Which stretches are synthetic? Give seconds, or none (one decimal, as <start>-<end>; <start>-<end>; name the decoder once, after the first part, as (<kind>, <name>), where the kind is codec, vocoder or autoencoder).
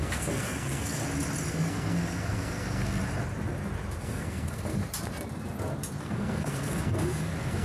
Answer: 0.0-1.0 (codec, SNAC); 1.5-3.0; 4.0-4.8; 6.0-7.6